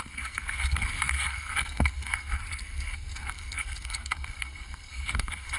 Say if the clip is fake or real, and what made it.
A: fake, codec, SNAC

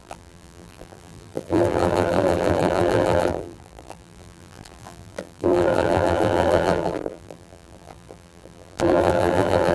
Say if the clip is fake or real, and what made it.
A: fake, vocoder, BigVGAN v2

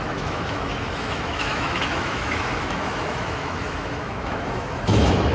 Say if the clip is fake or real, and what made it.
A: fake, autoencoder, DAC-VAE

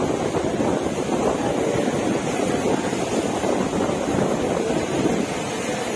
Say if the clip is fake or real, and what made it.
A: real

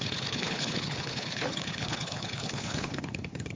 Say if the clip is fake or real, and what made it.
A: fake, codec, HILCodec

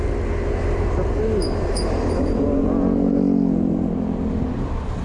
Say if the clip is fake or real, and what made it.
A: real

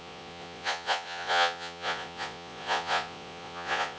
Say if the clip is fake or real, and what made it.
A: fake, vocoder, Vocos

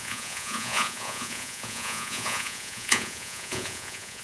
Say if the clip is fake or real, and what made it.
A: fake, vocoder, Vocos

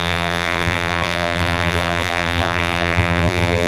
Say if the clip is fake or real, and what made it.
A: fake, vocoder, BigVGAN v2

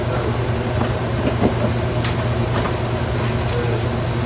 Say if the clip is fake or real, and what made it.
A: real